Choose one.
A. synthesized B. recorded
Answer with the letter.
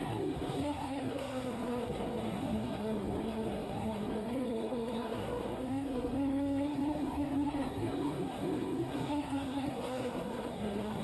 A